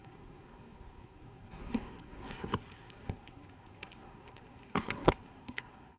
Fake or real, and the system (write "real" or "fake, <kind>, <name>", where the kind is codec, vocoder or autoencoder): fake, codec, SNAC